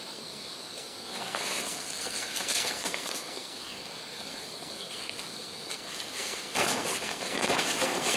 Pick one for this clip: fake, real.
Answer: fake